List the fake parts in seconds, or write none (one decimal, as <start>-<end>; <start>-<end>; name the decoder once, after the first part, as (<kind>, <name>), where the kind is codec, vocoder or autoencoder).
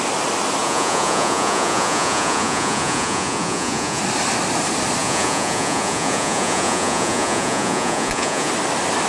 0.6-4.0 (vocoder, Vocos); 5.0-8.5